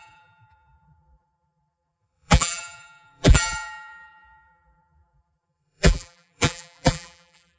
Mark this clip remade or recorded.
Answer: remade